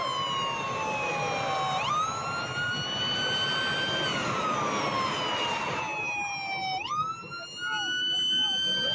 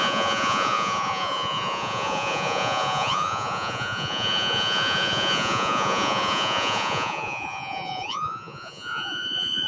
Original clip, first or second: first